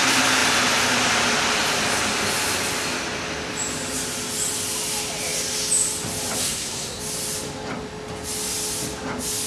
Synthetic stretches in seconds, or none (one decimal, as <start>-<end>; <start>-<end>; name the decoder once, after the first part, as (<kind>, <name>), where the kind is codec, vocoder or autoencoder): 6.4-7.0 (codec, SNAC)